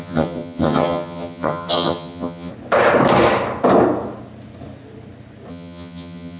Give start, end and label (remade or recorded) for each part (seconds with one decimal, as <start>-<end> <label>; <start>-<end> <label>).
0.0-2.5 remade; 2.5-5.5 recorded; 5.5-6.4 remade